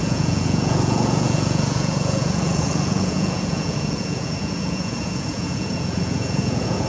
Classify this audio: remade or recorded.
remade